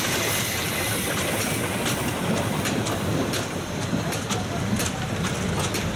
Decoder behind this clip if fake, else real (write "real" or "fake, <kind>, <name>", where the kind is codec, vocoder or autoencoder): fake, vocoder, BigVGAN v2